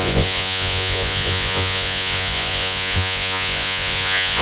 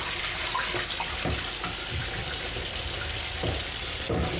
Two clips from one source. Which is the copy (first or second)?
first